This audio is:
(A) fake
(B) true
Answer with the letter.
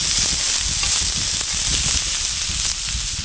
B